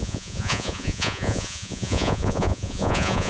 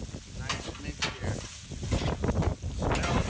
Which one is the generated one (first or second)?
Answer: first